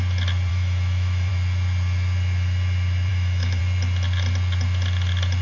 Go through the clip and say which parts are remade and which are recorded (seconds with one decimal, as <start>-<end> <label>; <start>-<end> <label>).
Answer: 0.0-0.5 recorded; 0.5-1.3 remade; 1.3-3.1 recorded; 3.1-3.6 remade; 3.6-5.4 recorded

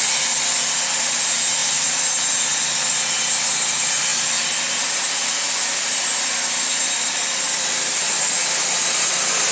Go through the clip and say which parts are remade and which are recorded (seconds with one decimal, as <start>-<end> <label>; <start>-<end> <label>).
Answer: 0.0-9.5 recorded